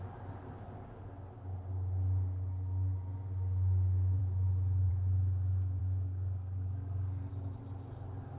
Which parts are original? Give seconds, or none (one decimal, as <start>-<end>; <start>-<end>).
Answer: 0.0-5.8; 7.3-8.4